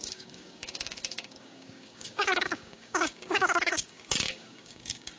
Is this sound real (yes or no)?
no